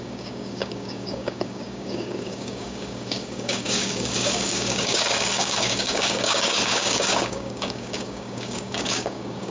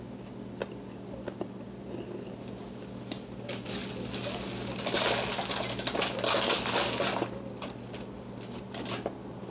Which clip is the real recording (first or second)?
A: second